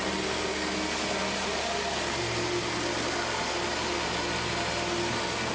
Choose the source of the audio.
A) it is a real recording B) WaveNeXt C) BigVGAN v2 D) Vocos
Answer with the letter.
A